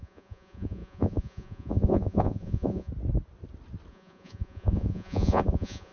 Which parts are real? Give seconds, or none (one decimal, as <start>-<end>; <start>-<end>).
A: 2.9-3.9